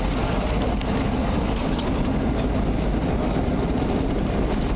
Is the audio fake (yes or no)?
no